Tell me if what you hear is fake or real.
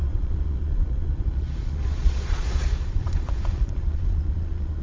fake